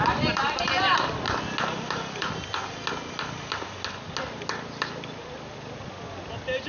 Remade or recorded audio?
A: recorded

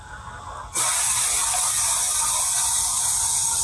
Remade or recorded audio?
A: recorded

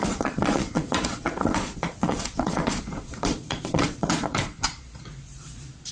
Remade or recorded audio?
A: remade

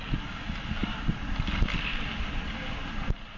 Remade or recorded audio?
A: recorded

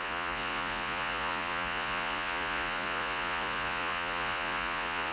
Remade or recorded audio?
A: remade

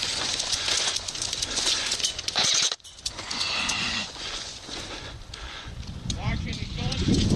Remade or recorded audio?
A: remade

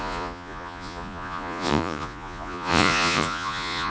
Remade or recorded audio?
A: remade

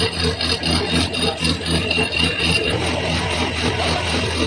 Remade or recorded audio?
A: recorded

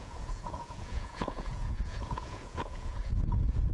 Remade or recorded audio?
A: remade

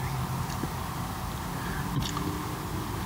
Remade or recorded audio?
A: recorded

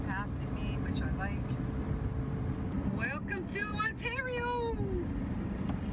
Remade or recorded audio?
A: recorded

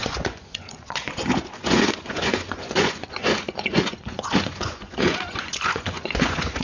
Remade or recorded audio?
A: remade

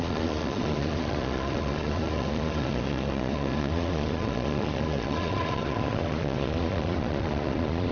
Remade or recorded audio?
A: remade